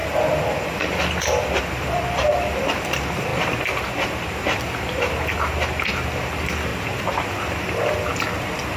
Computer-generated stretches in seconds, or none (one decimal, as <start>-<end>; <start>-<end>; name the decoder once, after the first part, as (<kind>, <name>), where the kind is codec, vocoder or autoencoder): 0.0-3.3 (vocoder, BigVGAN v2); 5.9-6.7; 7.3-8.1